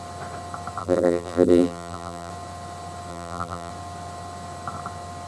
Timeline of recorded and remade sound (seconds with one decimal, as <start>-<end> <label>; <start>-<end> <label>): 0.0-0.8 recorded; 0.8-2.3 remade; 2.3-3.1 recorded; 3.1-3.7 remade; 3.7-5.3 recorded